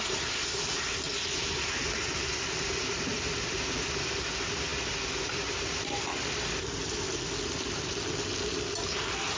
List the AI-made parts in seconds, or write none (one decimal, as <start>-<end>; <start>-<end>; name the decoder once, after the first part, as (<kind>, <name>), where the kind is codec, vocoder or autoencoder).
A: none